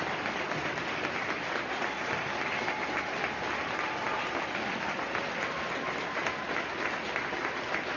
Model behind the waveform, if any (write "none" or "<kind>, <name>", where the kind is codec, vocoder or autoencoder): none